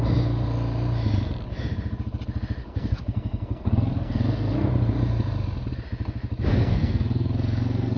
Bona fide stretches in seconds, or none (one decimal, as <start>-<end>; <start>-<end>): 0.0-2.6; 4.7-6.5